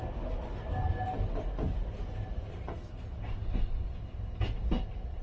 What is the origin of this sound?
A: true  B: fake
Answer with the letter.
A